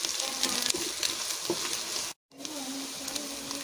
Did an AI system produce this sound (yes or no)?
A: no